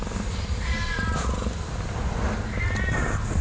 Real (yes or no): yes